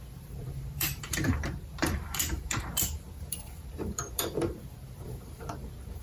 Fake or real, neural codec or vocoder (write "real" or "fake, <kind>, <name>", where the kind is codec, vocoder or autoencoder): fake, vocoder, BigVGAN v2